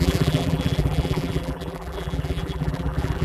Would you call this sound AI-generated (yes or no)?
yes